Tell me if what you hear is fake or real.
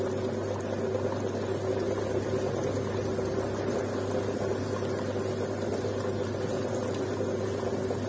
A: real